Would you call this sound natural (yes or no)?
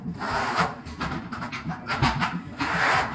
no